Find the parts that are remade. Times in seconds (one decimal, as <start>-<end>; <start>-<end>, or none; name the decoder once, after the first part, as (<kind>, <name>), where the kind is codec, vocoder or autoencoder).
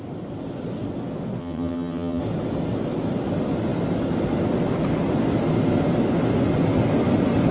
1.4-2.2 (vocoder, HiFi-GAN)